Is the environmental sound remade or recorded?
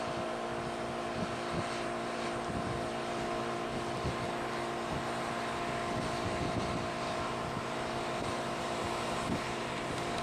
remade